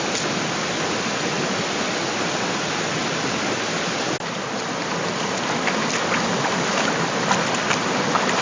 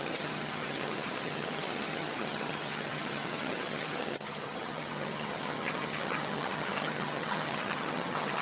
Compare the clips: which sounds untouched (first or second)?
first